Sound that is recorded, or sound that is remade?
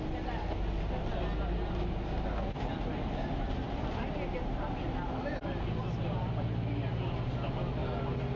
recorded